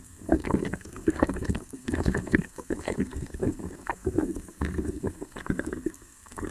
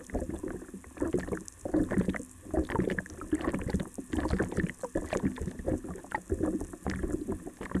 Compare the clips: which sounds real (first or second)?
second